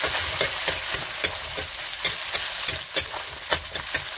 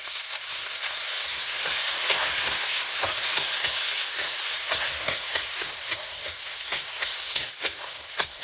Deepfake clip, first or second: second